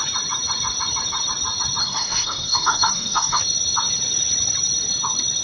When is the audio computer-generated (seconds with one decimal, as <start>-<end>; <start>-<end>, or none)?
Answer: 1.8-3.4